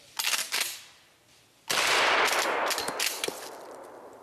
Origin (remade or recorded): recorded